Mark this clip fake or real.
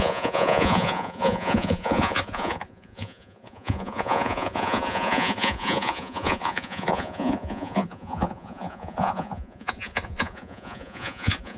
fake